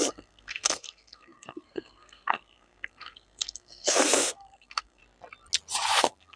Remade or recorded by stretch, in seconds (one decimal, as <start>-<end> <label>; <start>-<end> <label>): 0.0-5.0 remade; 5.0-6.0 recorded; 6.0-6.4 remade